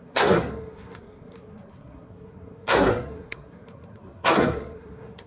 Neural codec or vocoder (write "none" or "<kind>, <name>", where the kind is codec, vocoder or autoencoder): codec, SNAC